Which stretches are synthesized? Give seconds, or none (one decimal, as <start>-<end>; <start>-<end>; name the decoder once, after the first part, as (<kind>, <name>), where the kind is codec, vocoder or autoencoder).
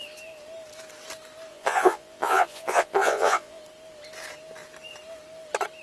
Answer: 1.5-3.6 (vocoder, Vocos)